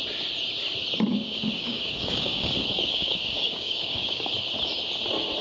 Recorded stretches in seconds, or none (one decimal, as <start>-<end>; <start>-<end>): 0.0-1.1; 4.3-5.4